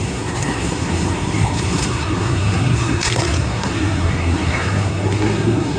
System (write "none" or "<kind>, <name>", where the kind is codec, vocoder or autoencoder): codec, SNAC